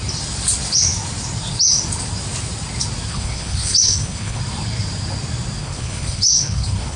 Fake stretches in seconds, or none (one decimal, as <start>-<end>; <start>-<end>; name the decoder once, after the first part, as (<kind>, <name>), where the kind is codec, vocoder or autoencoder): 3.1-4.4 (codec, HILCodec); 5.6-7.0